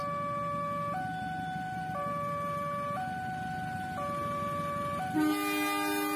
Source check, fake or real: real